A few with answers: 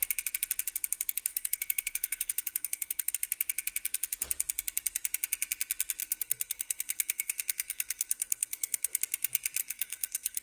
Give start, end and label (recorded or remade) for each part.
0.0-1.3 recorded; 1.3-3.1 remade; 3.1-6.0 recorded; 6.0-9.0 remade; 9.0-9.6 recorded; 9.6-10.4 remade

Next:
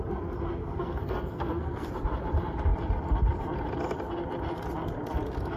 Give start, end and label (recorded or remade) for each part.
0.0-0.6 recorded; 0.6-1.9 remade; 1.9-5.6 recorded